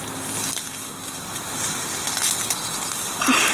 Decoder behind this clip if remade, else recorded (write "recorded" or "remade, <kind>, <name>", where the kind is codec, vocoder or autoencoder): recorded